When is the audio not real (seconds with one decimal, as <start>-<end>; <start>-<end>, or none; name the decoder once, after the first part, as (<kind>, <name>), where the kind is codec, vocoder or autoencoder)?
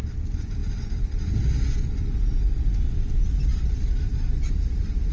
none